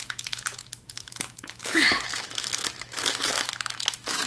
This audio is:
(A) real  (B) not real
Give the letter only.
B